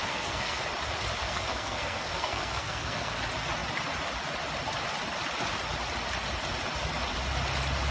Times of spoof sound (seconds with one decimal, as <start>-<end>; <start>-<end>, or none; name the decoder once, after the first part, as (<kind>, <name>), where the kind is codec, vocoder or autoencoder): 0.0-0.6 (codec, SNAC); 1.2-3.2